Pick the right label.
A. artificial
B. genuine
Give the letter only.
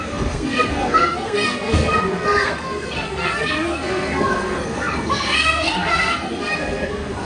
A